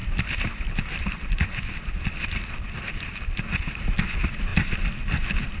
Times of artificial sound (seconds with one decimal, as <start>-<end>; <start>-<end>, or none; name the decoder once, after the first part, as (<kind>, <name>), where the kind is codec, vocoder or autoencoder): none